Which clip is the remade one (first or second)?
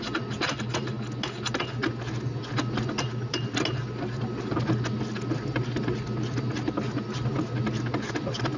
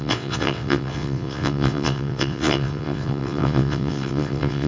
second